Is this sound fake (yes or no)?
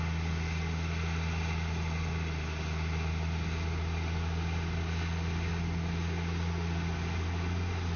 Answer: no